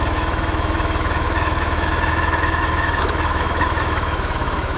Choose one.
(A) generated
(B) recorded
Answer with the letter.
A